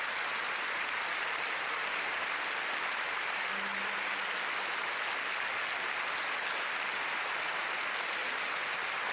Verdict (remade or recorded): recorded